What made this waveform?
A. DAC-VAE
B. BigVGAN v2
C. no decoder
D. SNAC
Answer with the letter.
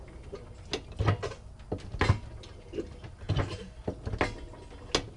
C